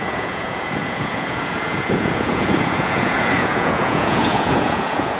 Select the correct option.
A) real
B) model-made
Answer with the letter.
B